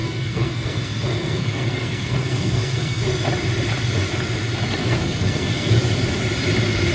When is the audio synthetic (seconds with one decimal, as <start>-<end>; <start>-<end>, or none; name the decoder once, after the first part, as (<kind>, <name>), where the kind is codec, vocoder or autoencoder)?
0.0-3.0 (codec, SNAC); 4.8-5.8